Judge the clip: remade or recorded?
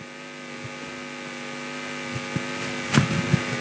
recorded